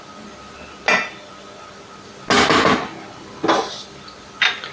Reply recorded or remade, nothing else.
recorded